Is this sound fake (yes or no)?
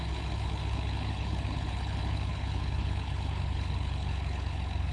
yes